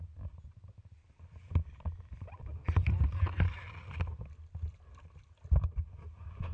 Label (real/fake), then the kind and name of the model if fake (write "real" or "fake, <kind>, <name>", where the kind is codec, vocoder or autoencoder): real